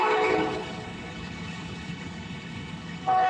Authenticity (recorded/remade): remade